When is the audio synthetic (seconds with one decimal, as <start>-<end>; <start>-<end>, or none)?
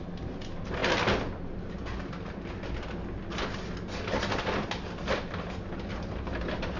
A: none